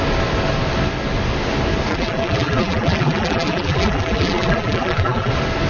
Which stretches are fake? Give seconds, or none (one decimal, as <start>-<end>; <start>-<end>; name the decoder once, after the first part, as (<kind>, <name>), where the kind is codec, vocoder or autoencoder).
1.9-5.3 (vocoder, BigVGAN v2)